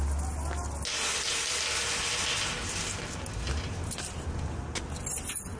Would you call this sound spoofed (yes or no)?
no